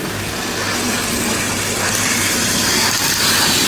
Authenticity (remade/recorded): recorded